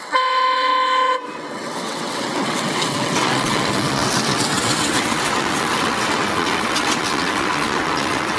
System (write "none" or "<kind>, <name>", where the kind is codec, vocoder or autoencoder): vocoder, WaveNeXt